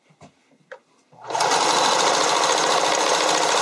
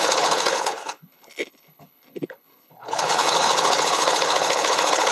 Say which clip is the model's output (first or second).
second